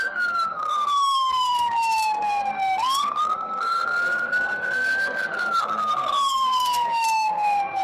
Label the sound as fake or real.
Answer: fake